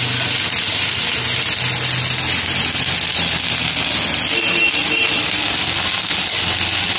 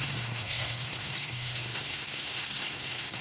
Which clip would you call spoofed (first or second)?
second